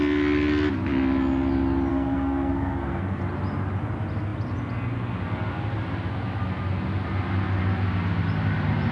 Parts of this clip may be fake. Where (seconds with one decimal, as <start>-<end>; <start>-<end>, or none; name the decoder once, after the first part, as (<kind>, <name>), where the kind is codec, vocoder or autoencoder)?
1.9-3.2 (codec, SNAC)